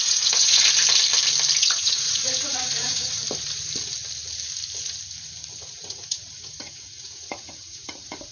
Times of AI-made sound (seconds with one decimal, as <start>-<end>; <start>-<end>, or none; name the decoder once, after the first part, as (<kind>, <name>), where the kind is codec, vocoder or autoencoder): 0.0-0.6 (vocoder, Vocos); 1.6-3.2; 5.7-8.3